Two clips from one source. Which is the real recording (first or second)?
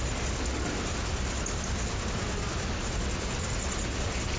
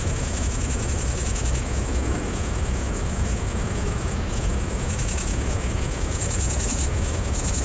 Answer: first